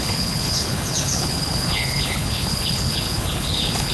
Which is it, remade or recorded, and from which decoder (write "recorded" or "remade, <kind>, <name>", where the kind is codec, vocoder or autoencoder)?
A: remade, codec, HILCodec